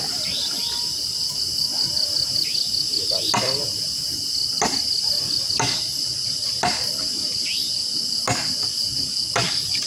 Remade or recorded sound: recorded